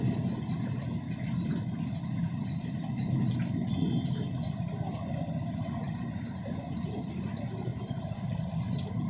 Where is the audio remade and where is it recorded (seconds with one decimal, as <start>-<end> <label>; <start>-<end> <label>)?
0.0-7.7 recorded; 7.7-9.1 remade